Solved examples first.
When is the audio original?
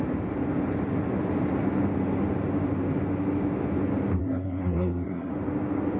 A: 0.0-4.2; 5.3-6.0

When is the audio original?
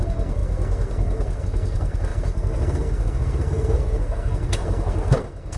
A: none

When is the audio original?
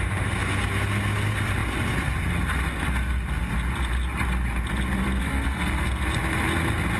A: 0.0-5.2; 5.9-7.0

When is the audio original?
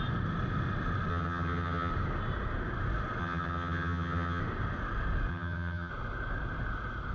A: 0.0-1.1; 1.9-3.2; 4.4-5.3; 5.9-7.1